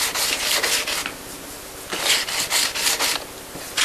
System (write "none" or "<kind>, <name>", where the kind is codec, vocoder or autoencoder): none